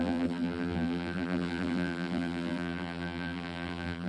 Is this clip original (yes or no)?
no